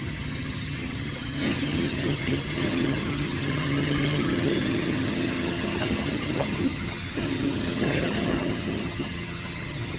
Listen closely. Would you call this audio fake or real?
fake